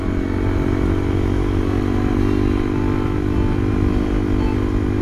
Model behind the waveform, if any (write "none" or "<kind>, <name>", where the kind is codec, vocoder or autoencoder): none